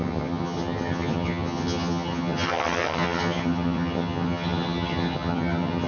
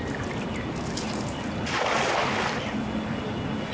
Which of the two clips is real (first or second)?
second